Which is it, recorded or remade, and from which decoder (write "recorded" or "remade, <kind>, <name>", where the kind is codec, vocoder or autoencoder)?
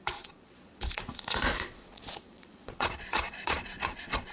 remade, vocoder, Vocos